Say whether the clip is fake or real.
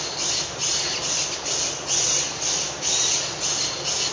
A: real